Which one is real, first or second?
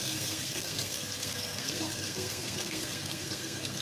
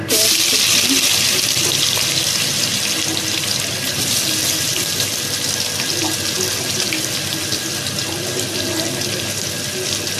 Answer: second